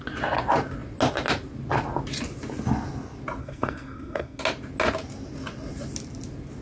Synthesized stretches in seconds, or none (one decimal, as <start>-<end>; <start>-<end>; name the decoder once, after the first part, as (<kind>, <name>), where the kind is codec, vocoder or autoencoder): 3.4-4.4 (codec, SNAC)